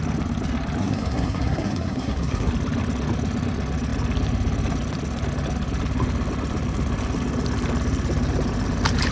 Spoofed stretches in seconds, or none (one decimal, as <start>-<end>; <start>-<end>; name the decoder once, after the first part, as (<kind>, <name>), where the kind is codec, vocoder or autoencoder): 0.8-2.5 (codec, SNAC)